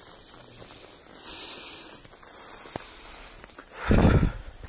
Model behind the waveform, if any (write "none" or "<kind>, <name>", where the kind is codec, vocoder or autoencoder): none